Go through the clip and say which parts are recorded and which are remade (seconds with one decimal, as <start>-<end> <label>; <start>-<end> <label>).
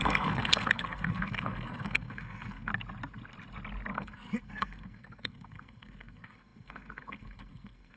0.0-2.7 remade; 2.7-3.9 recorded; 3.9-8.0 remade